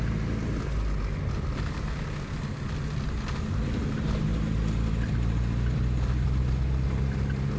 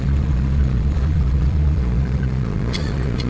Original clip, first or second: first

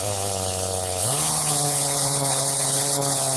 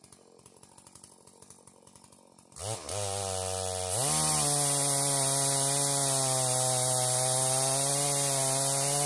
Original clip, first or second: second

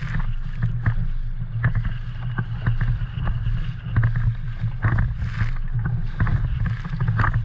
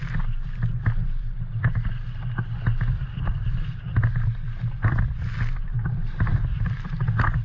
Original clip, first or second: first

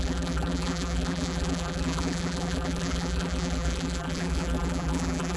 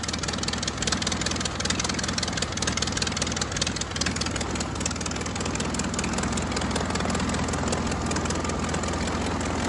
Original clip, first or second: second